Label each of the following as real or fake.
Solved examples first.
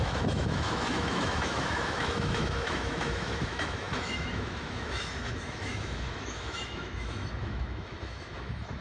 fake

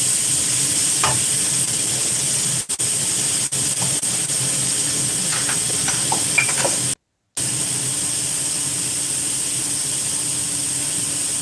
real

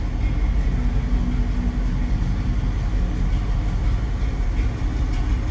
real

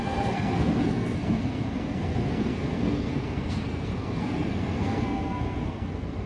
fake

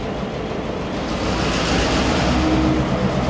real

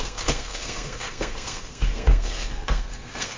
fake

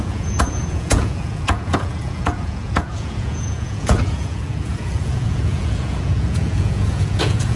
fake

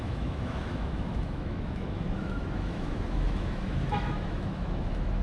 fake